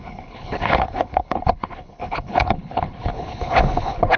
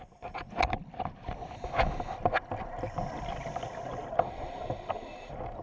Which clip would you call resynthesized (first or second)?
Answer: first